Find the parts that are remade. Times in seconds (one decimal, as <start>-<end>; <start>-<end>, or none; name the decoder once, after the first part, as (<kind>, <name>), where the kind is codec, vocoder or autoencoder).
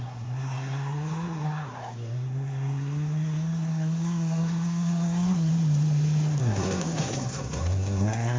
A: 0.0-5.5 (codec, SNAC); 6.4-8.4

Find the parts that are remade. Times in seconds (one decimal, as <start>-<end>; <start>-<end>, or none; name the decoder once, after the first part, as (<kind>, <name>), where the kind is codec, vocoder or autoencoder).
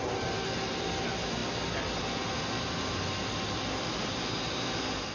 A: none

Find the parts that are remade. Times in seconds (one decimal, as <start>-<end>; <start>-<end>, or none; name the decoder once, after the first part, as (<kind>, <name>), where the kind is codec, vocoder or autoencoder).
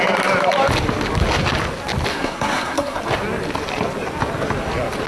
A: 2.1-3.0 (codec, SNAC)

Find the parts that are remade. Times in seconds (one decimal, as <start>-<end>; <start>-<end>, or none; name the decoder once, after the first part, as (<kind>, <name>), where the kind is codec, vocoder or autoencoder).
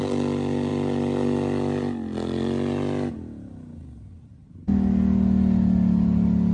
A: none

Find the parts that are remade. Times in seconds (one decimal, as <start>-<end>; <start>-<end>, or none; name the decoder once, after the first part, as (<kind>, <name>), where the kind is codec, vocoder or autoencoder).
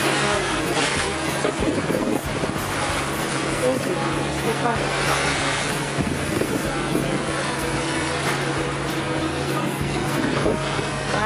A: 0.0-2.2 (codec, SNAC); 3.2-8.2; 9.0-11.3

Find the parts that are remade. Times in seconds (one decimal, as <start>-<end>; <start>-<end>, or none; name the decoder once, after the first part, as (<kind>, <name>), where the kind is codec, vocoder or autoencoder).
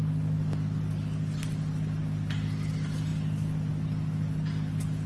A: none